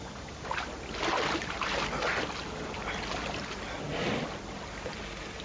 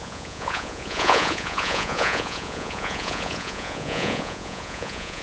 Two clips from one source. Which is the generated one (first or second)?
second